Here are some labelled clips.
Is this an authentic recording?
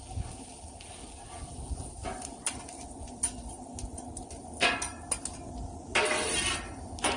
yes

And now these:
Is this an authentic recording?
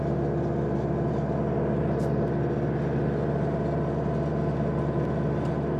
yes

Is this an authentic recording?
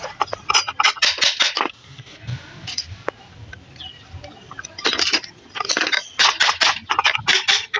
yes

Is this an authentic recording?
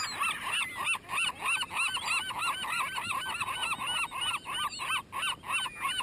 yes